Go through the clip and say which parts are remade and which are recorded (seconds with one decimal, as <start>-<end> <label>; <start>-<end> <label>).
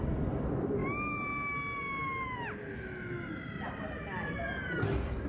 0.0-5.3 recorded